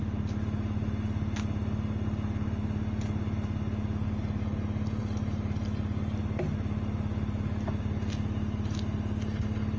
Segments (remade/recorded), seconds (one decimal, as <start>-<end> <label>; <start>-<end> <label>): 0.0-9.8 recorded